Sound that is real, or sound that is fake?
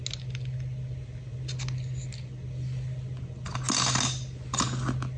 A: real